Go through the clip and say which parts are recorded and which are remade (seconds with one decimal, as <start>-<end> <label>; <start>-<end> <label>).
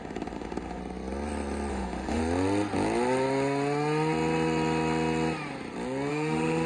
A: 0.0-0.8 remade; 0.8-1.7 recorded; 1.7-2.2 remade; 2.2-6.1 recorded; 6.1-6.7 remade